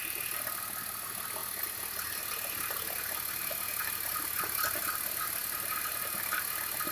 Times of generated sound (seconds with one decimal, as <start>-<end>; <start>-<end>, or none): none